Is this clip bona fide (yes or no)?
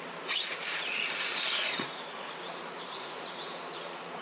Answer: no